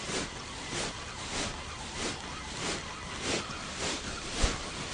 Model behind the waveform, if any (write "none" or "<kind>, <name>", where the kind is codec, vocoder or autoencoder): none